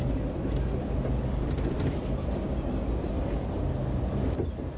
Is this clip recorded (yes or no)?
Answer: yes